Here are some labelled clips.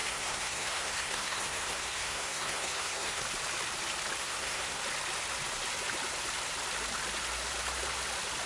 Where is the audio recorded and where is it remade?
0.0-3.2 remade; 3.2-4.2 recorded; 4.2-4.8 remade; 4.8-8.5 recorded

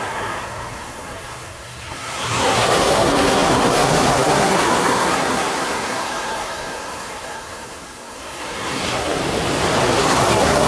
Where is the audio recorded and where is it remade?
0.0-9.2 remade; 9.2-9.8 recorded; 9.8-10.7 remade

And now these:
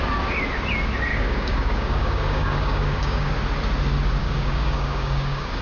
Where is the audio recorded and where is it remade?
0.0-1.1 recorded; 1.1-3.3 remade; 3.3-4.2 recorded; 4.2-5.6 remade

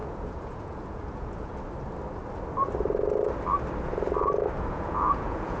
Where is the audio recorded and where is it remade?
0.0-1.5 remade; 1.5-4.7 recorded; 4.7-5.6 remade